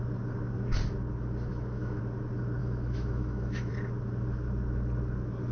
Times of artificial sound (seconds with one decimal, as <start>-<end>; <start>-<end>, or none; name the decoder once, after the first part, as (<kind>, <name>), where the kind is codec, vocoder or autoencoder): 1.5-2.0 (autoencoder, DAC-VAE); 2.6-3.7